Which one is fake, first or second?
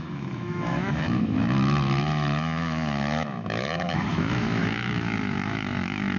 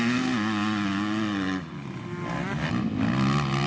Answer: first